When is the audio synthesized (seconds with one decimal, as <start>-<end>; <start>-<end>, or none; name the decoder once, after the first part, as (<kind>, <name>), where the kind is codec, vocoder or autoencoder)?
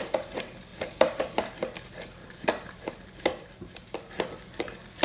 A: 0.7-1.2 (vocoder, BigVGAN v2); 2.2-2.9